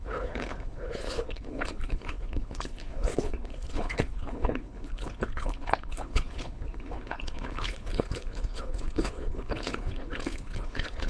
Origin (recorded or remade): remade